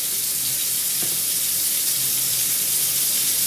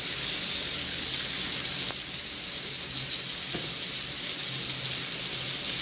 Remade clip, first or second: first